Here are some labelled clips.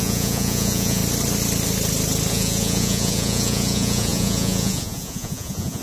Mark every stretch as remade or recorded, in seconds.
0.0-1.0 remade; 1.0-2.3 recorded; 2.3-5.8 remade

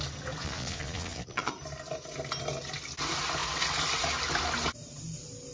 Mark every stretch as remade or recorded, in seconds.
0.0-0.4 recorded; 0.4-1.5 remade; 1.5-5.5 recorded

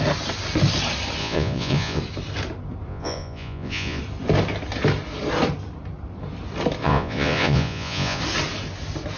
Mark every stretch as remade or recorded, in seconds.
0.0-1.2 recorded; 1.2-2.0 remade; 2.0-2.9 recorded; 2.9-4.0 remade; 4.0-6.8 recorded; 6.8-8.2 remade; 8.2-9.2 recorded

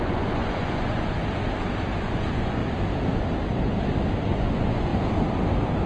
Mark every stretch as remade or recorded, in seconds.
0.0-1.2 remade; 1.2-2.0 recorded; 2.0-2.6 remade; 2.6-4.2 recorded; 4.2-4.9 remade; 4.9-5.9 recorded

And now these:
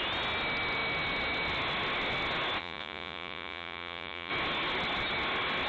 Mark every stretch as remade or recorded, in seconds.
0.0-2.6 recorded; 2.6-4.3 remade; 4.3-5.7 recorded